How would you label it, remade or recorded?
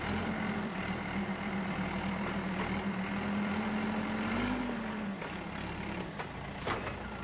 remade